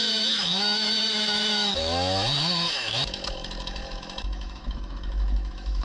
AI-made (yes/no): yes